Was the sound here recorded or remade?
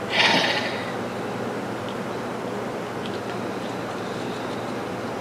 recorded